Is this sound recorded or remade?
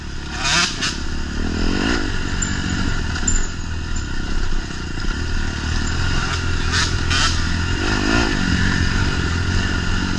recorded